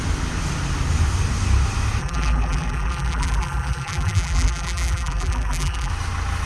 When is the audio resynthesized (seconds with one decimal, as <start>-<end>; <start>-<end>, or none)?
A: 2.0-5.9